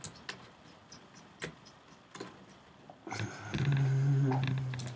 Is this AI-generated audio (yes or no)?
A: no